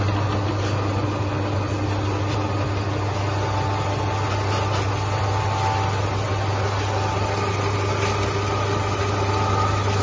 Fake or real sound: real